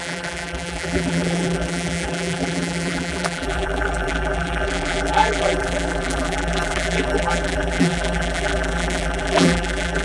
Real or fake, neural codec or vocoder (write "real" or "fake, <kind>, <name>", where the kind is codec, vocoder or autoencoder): fake, vocoder, BigVGAN v2